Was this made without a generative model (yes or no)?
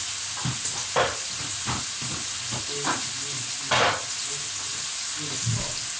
yes